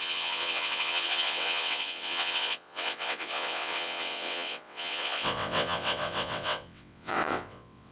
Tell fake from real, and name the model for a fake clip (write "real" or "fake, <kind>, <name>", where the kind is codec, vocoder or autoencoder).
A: fake, vocoder, WaveNeXt